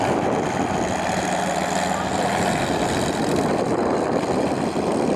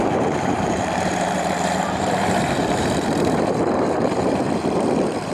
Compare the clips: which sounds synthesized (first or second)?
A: second